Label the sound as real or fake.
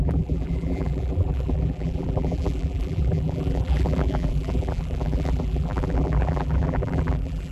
fake